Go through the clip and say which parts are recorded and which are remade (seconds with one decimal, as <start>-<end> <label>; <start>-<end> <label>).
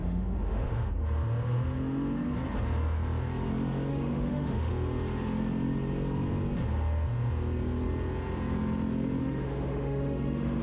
0.0-0.9 remade; 0.9-3.9 recorded; 3.9-4.7 remade; 4.7-9.2 recorded; 9.2-10.6 remade